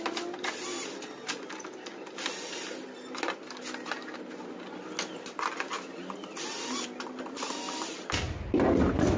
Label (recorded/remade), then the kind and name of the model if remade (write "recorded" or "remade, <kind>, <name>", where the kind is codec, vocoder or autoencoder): recorded